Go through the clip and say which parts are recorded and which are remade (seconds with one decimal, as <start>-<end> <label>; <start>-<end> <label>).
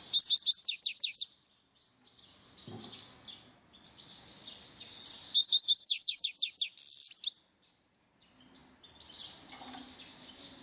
0.0-5.4 recorded; 5.4-6.2 remade; 6.2-10.6 recorded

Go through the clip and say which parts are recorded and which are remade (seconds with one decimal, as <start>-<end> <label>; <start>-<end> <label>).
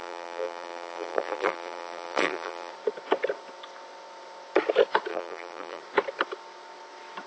0.0-2.7 remade; 2.7-5.1 recorded; 5.1-5.8 remade; 5.8-7.3 recorded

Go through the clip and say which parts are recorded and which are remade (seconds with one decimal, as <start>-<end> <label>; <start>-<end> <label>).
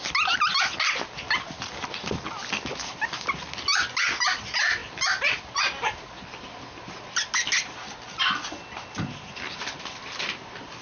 0.0-10.8 recorded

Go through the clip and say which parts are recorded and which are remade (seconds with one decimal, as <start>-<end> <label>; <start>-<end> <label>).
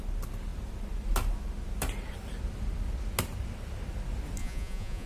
0.0-4.4 recorded; 4.4-5.1 remade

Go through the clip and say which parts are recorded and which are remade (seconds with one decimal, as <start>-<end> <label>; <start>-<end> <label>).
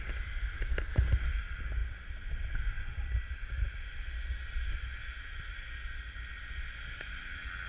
0.0-7.7 recorded